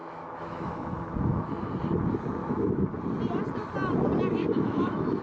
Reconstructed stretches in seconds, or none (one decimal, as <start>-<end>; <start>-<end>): 0.0-1.7; 2.4-3.0; 4.4-5.2